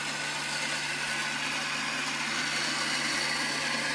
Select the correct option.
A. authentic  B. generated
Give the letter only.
A